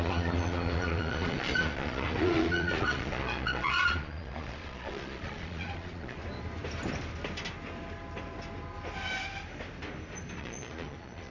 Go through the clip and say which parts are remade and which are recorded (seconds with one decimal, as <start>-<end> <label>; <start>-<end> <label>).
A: 0.0-6.2 remade; 6.2-10.4 recorded; 10.4-11.3 remade